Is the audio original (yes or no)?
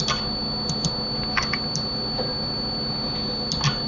yes